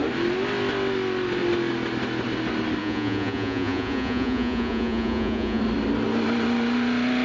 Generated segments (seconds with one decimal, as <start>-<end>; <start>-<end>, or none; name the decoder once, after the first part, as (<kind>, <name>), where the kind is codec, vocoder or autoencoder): 2.8-5.6 (vocoder, Vocos)